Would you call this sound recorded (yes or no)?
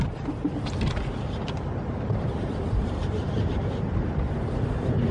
no